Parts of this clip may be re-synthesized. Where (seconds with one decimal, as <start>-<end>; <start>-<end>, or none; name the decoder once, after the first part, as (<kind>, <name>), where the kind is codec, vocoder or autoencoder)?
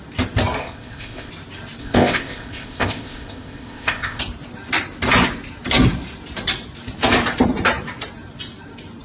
0.6-1.3 (codec, ZipCodec); 1.8-4.2